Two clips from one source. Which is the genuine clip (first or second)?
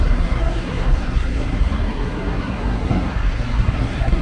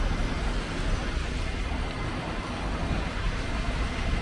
second